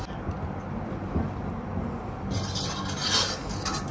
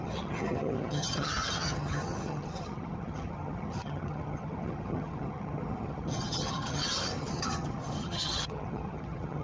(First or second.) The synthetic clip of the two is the second